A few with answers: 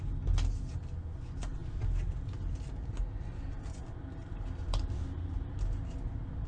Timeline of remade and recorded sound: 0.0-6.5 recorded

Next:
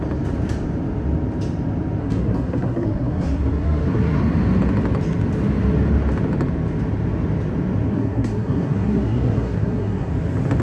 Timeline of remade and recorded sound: 0.0-2.0 recorded; 2.0-4.2 remade; 4.2-7.9 recorded; 7.9-10.1 remade; 10.1-10.6 recorded

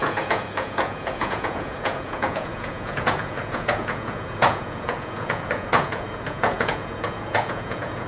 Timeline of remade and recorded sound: 0.0-8.1 remade

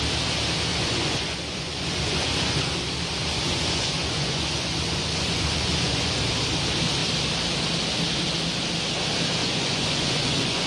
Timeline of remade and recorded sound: 0.0-0.7 recorded; 0.7-2.7 remade; 2.7-3.2 recorded; 3.2-6.2 remade; 6.2-9.4 recorded; 9.4-10.7 remade

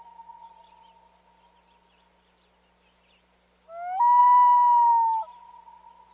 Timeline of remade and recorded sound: 0.0-4.2 recorded; 4.2-4.9 remade; 4.9-6.1 recorded

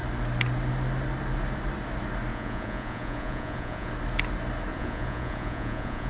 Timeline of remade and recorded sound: 0.0-2.3 recorded; 2.3-3.9 remade; 3.9-4.7 recorded; 4.7-6.1 remade

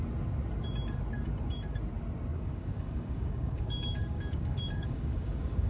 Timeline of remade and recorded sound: 0.0-2.3 recorded; 2.3-5.7 remade